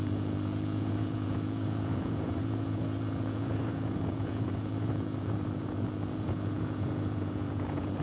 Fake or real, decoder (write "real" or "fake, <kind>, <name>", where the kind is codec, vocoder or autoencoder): fake, vocoder, Vocos